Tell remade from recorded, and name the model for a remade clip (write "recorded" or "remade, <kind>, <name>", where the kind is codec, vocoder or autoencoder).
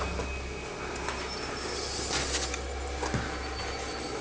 recorded